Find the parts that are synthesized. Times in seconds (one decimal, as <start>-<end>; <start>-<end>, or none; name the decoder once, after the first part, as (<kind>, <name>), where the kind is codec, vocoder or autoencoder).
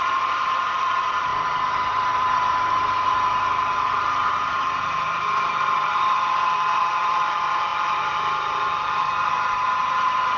0.0-10.4 (vocoder, BigVGAN v2)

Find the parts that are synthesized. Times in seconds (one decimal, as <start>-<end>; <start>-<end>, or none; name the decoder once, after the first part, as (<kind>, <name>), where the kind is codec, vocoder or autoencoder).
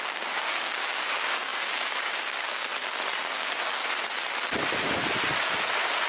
0.0-2.7 (codec, DAC); 3.2-3.8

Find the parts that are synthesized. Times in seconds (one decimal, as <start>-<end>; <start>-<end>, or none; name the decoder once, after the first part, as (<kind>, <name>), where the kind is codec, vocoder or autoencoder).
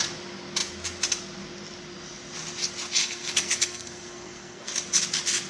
3.0-4.7 (codec, SNAC)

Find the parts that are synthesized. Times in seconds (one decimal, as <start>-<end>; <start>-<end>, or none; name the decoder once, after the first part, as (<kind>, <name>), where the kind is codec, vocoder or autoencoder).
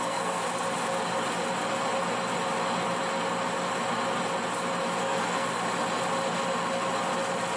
0.0-0.4 (codec, SNAC); 5.0-5.5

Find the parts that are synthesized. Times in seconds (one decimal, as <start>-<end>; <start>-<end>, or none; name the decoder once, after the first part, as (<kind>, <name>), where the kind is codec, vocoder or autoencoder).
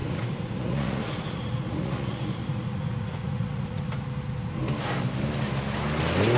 0.0-3.8 (vocoder, Vocos)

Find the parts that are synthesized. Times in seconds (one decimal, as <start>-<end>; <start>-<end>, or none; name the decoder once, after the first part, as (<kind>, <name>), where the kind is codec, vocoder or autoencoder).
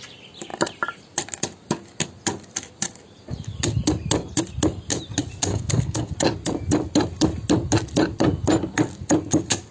5.5-6.1 (codec, SNAC)